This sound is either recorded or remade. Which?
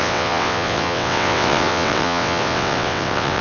remade